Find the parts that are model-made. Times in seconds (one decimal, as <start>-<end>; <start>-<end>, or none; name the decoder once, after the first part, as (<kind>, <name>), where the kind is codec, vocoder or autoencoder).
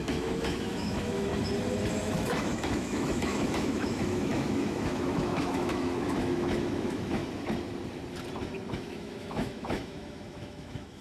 0.0-1.3 (autoencoder, DAC-VAE); 2.0-7.2; 8.7-11.0